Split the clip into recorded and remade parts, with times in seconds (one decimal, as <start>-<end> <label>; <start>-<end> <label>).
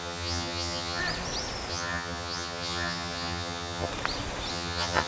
0.0-1.0 remade; 1.0-1.7 recorded; 1.7-3.9 remade; 3.9-4.5 recorded; 4.5-5.1 remade